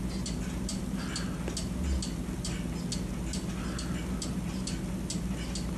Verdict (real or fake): real